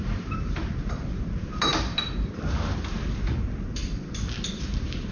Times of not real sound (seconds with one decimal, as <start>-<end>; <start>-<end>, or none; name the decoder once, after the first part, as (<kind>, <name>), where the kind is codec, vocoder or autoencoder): 0.0-3.8 (vocoder, BigVGAN v2); 4.5-5.1